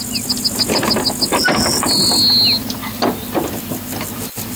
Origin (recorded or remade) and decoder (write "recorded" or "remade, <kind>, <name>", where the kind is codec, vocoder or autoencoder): recorded